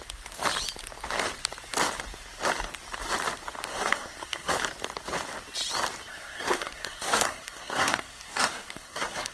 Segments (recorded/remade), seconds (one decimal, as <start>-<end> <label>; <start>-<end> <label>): 0.0-3.7 recorded; 3.7-4.5 remade; 4.5-6.1 recorded; 6.1-9.3 remade